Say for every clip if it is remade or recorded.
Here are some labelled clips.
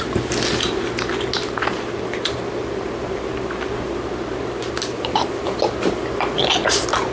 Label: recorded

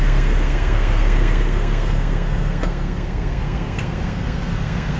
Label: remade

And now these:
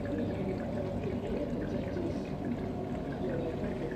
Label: recorded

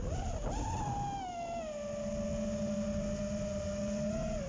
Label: recorded